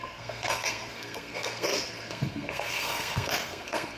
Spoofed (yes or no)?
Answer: yes